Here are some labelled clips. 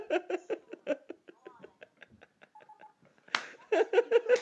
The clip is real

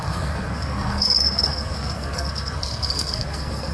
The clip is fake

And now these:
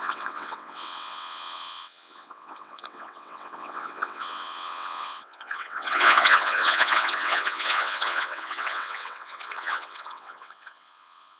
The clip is fake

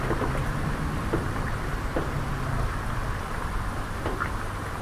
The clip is real